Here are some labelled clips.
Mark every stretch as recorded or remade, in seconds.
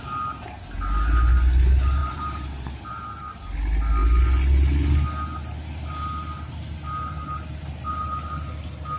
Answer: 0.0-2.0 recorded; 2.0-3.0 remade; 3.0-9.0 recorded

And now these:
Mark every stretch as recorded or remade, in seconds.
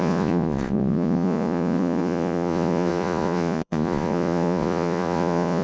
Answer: 0.0-5.6 remade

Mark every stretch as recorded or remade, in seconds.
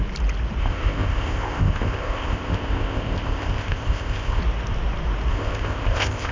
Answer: 0.0-0.6 recorded; 0.6-4.4 remade; 4.4-5.3 recorded; 5.3-6.3 remade